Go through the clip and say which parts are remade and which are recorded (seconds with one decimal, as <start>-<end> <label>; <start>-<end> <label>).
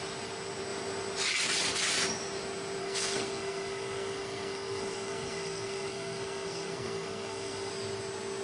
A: 0.0-2.8 recorded; 2.8-7.7 remade; 7.7-8.4 recorded